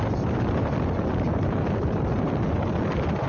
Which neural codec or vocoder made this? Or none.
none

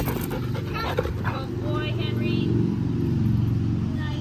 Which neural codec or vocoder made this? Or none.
none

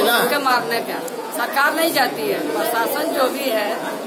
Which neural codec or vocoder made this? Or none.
vocoder, Vocos